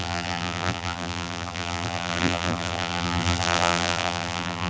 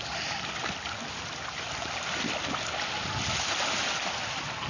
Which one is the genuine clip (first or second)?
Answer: second